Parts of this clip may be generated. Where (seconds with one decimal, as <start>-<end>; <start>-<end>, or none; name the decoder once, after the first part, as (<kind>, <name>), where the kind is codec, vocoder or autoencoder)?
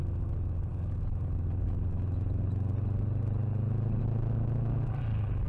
none